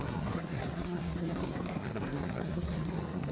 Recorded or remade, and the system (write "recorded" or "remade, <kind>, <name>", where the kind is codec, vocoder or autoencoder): remade, codec, SNAC